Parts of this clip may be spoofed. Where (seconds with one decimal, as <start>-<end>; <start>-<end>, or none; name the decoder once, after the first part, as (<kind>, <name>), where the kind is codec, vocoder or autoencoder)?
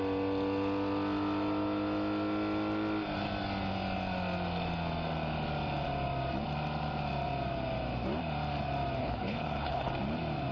9.0-9.9 (codec, HILCodec)